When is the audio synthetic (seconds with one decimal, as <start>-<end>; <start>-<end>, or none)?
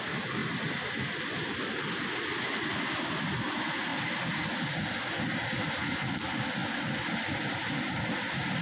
none